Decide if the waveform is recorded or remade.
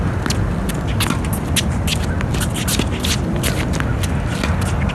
recorded